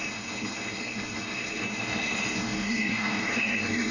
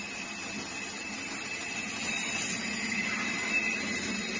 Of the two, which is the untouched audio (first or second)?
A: second